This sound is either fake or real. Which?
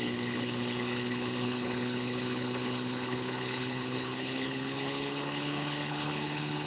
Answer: fake